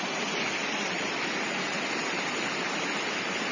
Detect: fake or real real